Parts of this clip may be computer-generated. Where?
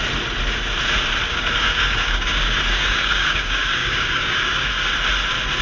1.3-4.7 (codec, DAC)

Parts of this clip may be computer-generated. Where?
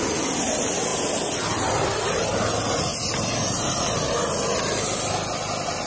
none